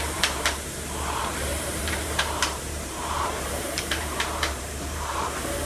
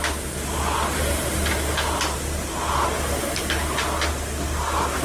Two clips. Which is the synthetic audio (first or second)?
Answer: first